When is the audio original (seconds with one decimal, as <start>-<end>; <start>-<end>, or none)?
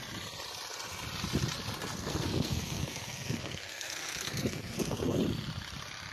0.0-2.0; 5.2-6.1